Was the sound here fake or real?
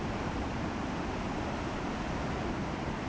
real